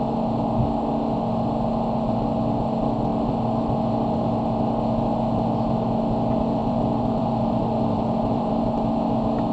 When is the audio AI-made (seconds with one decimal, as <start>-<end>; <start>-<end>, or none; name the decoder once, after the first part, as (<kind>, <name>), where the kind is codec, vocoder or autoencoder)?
6.6-8.5 (vocoder, BigVGAN v2)